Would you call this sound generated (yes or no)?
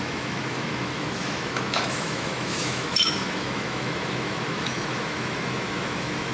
yes